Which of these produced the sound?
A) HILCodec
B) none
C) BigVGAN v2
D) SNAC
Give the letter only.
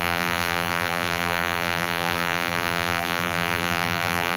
C